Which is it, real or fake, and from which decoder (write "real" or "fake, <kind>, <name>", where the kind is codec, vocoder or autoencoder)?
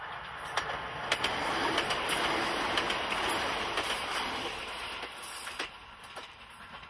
real